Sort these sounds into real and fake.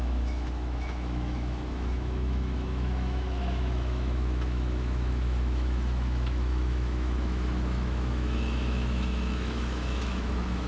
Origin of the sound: fake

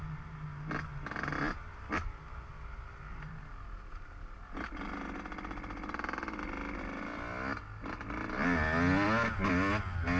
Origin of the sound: real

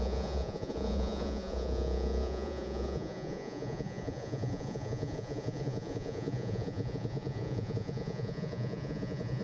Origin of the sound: fake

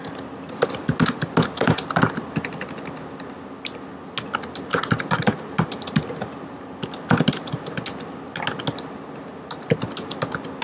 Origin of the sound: real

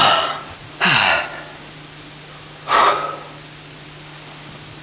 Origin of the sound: real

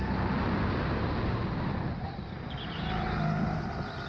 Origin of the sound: real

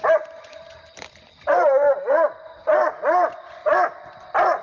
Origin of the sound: real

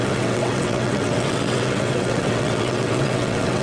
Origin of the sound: fake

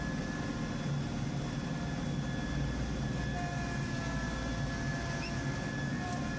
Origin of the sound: real